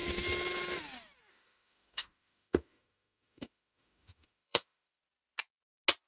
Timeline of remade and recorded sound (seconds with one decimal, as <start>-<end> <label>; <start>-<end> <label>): 0.0-1.3 recorded; 1.3-5.0 remade; 5.0-6.1 recorded